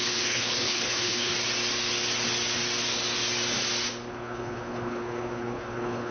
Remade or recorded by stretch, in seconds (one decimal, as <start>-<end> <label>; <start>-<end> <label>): 0.0-1.3 remade; 1.3-4.1 recorded; 4.1-6.1 remade